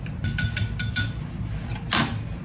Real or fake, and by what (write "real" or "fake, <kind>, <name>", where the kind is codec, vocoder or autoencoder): real